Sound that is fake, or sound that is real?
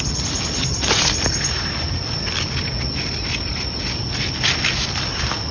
real